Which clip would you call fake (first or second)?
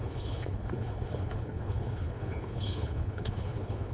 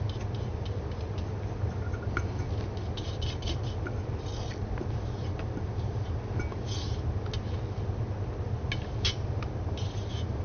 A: first